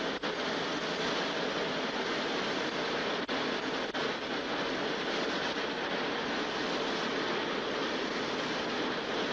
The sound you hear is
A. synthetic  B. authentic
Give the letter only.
B